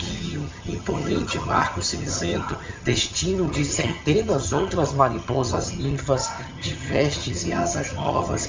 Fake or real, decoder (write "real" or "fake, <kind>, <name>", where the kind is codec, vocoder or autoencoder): fake, vocoder, HiFi-GAN